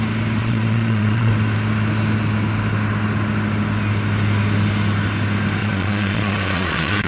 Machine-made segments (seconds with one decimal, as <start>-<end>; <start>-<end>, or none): 0.4-1.3; 5.6-7.1